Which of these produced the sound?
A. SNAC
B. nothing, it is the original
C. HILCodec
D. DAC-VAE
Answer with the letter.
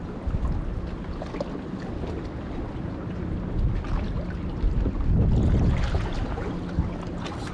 B